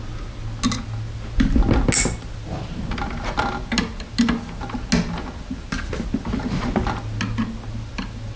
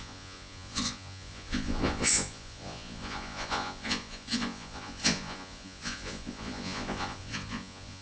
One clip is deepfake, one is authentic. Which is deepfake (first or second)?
second